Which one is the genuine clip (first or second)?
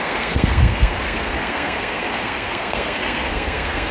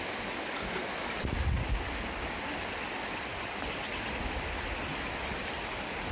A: second